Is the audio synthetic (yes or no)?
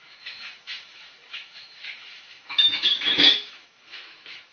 yes